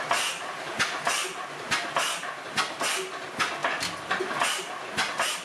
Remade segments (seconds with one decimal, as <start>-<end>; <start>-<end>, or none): none